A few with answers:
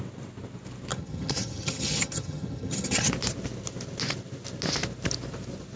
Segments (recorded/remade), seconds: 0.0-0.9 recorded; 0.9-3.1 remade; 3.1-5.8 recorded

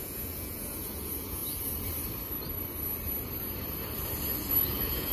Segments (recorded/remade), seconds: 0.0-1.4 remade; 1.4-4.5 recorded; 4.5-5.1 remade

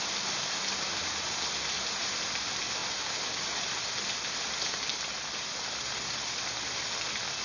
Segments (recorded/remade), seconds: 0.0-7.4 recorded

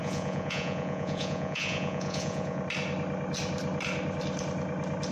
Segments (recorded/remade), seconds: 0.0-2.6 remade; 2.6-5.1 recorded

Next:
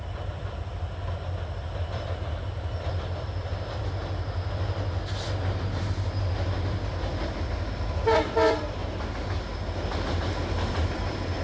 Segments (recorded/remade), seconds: 0.0-8.8 remade; 8.8-10.7 recorded; 10.7-11.4 remade